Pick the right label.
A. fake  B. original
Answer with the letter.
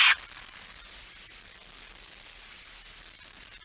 B